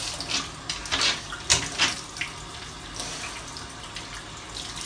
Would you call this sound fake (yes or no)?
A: no